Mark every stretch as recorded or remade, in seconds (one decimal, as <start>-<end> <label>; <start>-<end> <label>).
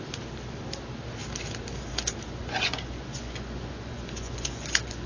0.0-2.4 recorded; 2.4-5.1 remade